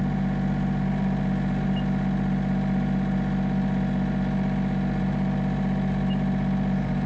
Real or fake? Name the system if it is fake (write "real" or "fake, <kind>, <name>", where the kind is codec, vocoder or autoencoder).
real